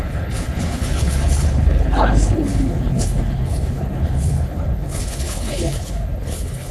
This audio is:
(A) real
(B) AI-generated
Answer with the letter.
B